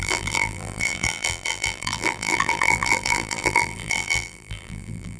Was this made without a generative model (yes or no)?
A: no